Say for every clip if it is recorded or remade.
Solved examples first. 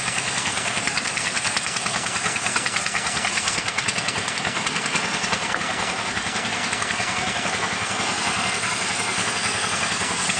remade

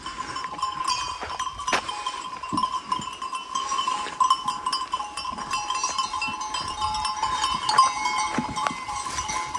recorded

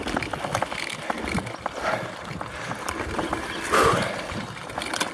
recorded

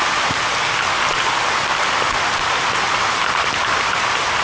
recorded